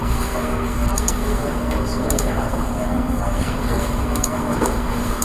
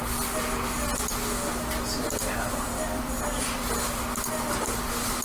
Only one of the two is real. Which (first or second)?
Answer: second